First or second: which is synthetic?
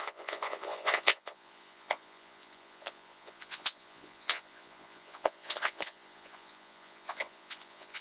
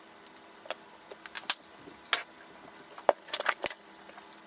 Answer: first